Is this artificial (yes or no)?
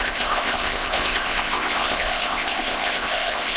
yes